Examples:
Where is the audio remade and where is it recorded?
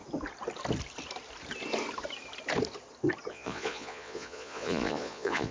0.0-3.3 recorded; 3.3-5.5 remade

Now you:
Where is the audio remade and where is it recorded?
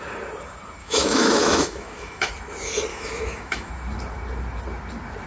0.0-0.8 recorded; 0.8-2.3 remade; 2.3-2.9 recorded; 2.9-3.7 remade; 3.7-5.3 recorded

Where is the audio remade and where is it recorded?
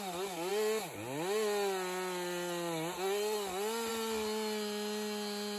0.0-5.6 recorded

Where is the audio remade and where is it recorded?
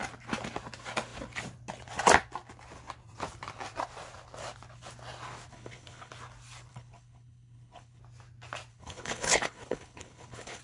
0.0-5.5 recorded; 5.5-6.1 remade; 6.1-6.7 recorded; 6.7-8.0 remade; 8.0-8.7 recorded; 8.7-10.6 remade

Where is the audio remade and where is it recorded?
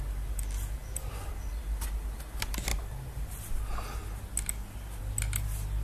0.0-5.8 recorded